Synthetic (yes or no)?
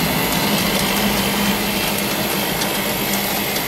no